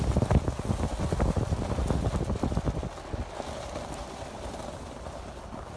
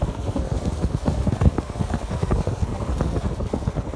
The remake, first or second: second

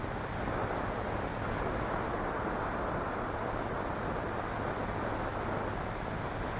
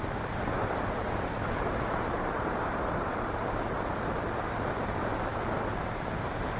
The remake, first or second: second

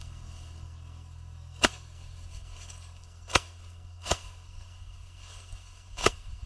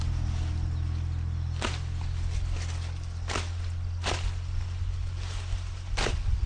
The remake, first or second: first